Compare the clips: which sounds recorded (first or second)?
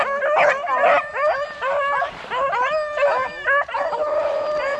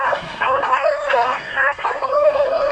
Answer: first